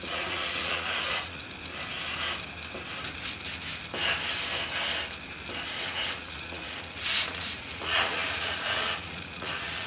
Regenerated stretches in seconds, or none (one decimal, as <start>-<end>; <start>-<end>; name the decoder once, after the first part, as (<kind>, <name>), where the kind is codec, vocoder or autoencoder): 0.0-1.4 (vocoder, Vocos); 5.7-9.9